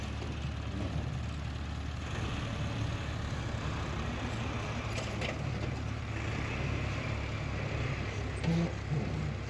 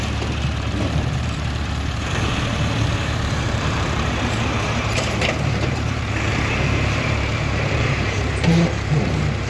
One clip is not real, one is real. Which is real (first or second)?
first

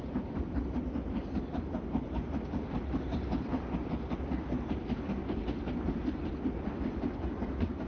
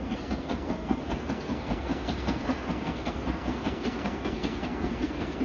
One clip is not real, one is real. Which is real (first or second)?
first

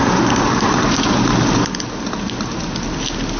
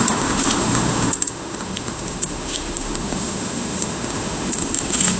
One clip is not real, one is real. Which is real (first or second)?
first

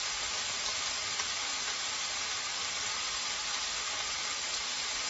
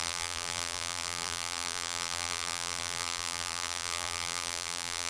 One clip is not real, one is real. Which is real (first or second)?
first